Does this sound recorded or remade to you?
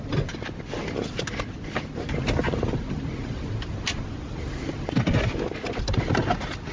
recorded